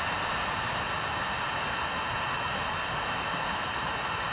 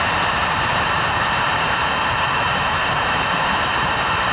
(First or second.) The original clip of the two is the first